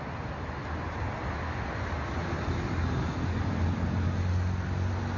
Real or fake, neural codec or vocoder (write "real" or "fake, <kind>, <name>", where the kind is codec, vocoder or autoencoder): real